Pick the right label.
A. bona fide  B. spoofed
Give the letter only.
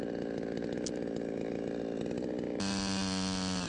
A